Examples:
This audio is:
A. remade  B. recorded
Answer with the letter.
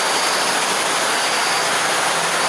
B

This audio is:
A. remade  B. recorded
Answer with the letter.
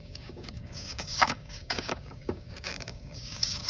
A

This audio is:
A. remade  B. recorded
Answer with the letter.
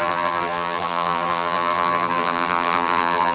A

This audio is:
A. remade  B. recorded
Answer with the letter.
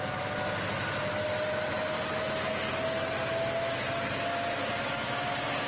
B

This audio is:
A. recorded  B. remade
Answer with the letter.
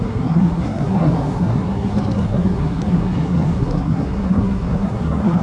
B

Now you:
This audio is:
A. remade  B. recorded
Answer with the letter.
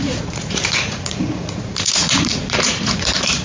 A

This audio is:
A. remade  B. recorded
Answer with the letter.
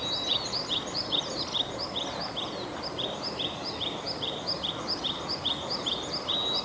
B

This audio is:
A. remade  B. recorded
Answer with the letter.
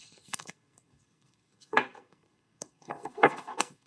A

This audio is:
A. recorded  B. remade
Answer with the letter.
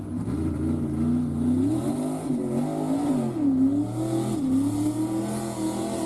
A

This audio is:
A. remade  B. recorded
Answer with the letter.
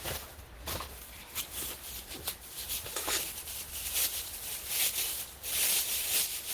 A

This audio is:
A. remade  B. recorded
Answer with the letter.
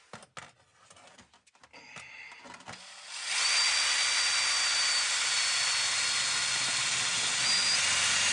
B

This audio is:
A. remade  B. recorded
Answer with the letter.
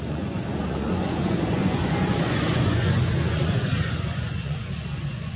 A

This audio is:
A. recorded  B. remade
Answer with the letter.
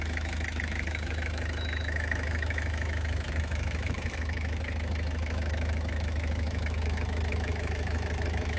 B